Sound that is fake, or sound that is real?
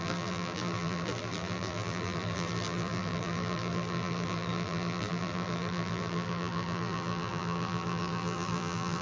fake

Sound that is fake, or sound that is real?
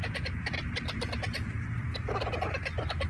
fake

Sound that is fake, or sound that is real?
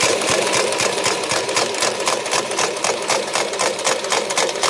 fake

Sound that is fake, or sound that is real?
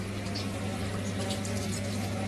real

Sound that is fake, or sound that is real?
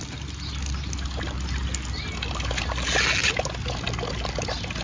real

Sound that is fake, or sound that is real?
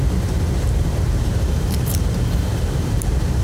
fake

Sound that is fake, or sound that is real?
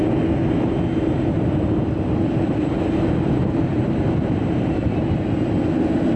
real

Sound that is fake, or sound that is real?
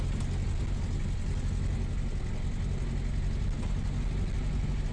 real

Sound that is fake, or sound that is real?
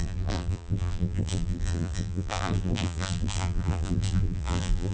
fake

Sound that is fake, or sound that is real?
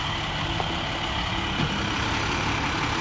real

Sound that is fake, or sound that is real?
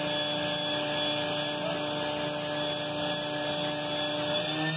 real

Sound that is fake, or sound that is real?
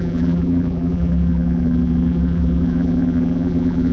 fake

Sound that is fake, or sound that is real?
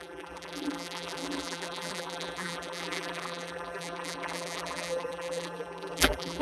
fake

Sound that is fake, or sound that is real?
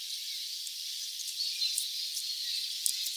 fake